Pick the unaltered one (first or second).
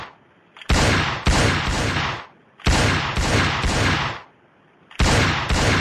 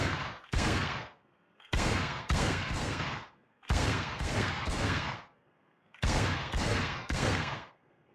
first